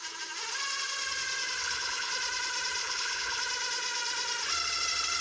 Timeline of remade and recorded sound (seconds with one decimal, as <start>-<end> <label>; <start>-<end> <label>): 0.0-1.6 recorded; 1.6-2.1 remade; 2.1-2.8 recorded; 2.8-3.4 remade; 3.4-5.2 recorded